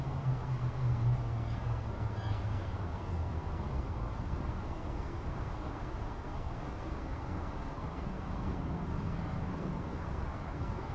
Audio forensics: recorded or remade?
remade